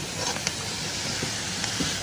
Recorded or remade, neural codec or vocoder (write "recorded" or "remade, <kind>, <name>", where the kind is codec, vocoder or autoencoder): recorded